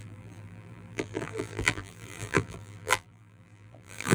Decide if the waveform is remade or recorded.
remade